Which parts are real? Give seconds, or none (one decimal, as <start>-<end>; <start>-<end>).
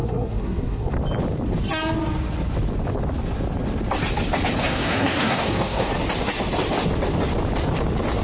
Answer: 0.9-4.6; 5.9-8.2